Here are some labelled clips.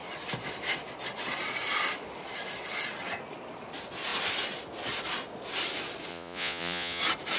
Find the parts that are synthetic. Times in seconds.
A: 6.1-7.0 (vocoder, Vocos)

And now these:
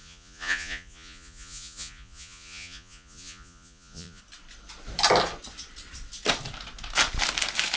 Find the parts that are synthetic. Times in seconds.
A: 0.0-4.2 (vocoder, Vocos)

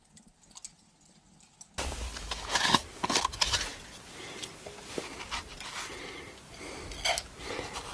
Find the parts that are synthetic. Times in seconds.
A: none

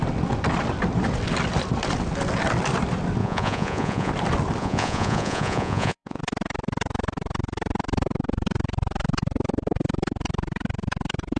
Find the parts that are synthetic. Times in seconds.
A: 3.2-4.1 (vocoder, Vocos); 4.6-6.2